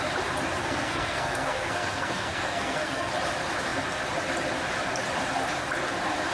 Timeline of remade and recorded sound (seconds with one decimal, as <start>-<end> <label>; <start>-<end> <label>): 0.0-0.6 recorded; 0.6-3.1 remade; 3.1-6.3 recorded